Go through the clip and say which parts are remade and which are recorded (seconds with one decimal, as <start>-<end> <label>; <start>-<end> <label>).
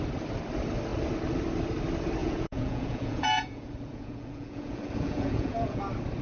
0.0-2.2 recorded; 2.2-5.8 remade; 5.8-6.2 recorded